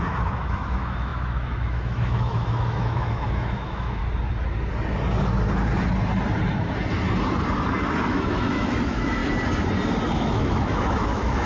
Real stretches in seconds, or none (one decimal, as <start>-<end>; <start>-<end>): 4.0-8.1; 9.2-10.1

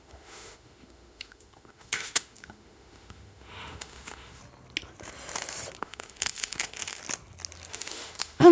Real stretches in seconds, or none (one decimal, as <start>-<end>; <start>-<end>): 4.4-5.8; 7.0-7.7

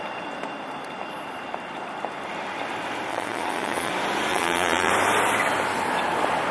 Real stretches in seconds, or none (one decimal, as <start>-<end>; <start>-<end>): 0.0-3.1; 3.9-4.3; 4.9-6.5

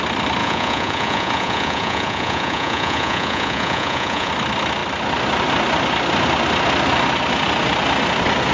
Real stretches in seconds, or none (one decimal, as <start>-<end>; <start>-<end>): 0.0-0.4; 4.3-8.5

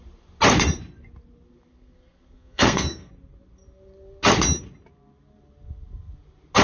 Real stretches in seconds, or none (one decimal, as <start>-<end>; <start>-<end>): 0.0-1.7; 3.1-6.6

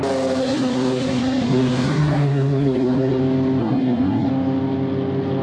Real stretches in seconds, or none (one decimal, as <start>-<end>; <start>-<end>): 0.0-0.4; 3.2-3.6; 4.3-5.4

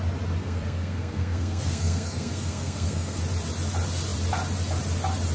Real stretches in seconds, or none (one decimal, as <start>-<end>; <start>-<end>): 0.0-0.4; 3.2-5.3